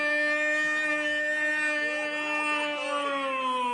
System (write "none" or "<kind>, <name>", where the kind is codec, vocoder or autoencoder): none